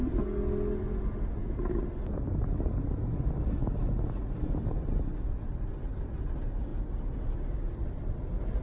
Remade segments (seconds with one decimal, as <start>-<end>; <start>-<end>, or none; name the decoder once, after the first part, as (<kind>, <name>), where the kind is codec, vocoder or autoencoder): none

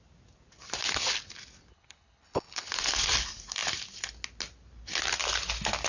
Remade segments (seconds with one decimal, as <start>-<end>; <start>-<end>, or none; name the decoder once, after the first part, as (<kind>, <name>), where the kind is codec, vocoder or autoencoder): 1.7-2.7 (codec, HILCodec)